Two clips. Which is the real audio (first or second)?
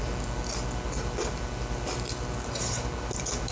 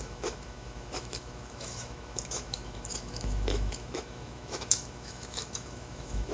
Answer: first